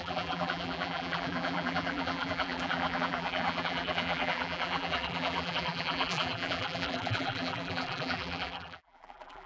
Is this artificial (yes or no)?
yes